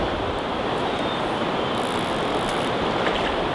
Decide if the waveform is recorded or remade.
recorded